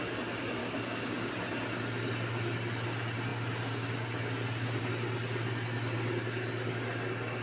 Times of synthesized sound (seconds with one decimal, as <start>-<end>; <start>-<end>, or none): 0.6-1.3